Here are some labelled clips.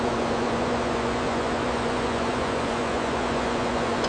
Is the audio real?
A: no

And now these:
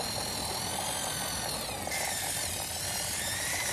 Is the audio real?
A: yes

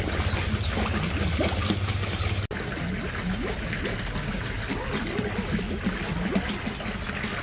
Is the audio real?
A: yes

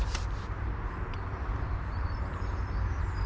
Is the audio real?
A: no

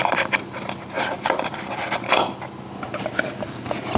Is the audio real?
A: yes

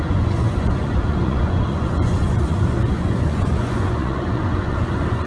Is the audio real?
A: no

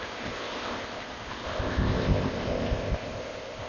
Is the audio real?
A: no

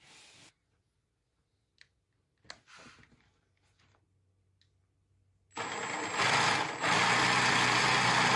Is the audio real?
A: yes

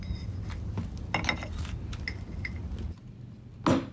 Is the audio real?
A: yes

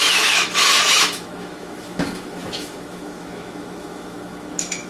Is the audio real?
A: no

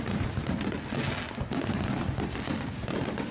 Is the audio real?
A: yes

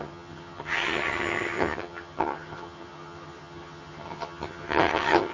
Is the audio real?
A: no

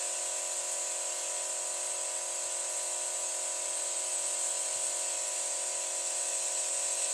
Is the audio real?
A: yes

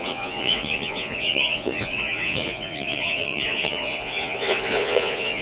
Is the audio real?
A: no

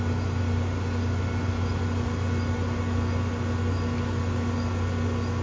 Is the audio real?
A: yes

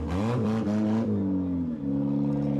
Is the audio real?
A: yes